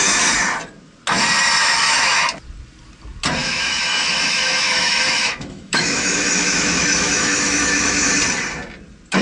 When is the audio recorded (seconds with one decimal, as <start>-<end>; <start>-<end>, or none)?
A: 0.0-1.6; 2.2-3.4; 8.1-9.2